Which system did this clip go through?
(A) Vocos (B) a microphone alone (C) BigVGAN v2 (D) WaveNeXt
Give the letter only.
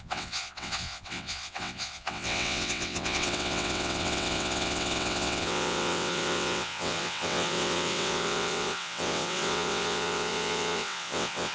D